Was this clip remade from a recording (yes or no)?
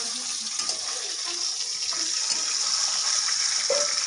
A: no